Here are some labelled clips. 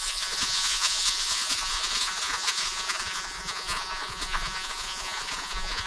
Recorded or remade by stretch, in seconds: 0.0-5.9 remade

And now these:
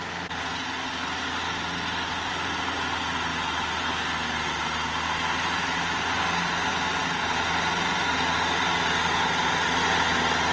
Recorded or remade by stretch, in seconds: 0.0-10.5 recorded